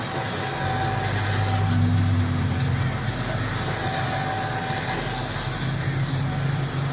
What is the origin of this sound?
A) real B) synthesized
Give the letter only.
A